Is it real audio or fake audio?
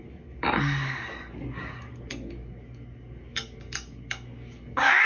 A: fake